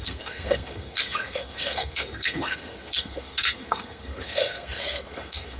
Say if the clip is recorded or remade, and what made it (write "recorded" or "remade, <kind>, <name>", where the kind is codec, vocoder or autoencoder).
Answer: remade, codec, SNAC